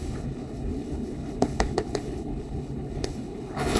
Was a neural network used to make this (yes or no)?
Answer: yes